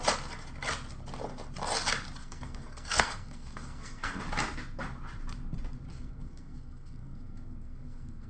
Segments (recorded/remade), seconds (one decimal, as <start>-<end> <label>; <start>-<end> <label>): 0.0-2.2 recorded; 2.2-4.2 remade; 4.2-5.9 recorded; 5.9-8.3 remade